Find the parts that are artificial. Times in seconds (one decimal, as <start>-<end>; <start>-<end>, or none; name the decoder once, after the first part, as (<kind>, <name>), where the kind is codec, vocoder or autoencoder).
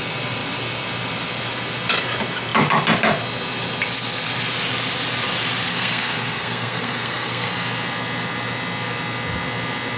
5.7-7.5 (codec, SNAC)